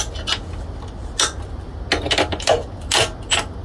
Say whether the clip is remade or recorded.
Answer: recorded